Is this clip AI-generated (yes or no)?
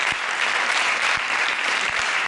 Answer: yes